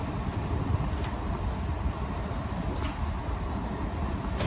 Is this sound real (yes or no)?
yes